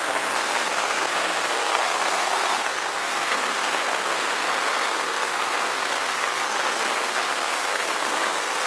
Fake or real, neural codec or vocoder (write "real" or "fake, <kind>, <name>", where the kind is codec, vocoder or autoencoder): fake, codec, SNAC